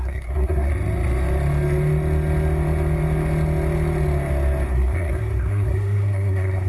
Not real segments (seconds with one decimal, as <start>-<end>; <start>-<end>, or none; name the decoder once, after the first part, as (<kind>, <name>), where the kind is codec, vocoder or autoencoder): 0.0-0.7 (codec, SNAC); 4.7-6.7